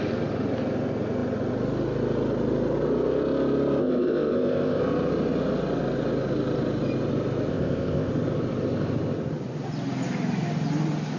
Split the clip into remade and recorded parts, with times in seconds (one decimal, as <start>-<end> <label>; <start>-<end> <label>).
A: 0.0-3.8 recorded; 3.8-4.8 remade; 4.8-7.5 recorded; 7.5-8.1 remade; 8.1-11.2 recorded